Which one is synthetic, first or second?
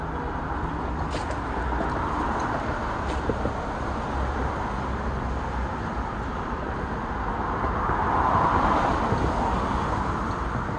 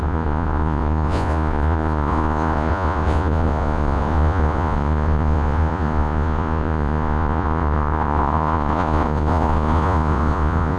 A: second